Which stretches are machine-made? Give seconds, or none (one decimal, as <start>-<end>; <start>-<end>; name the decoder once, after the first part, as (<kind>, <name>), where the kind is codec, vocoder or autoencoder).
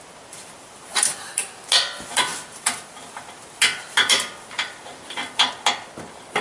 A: 0.9-1.6 (vocoder, BigVGAN v2); 2.3-3.2